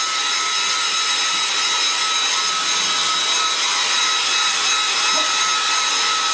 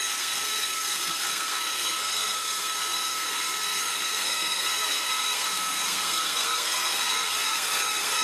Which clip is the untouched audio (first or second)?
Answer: first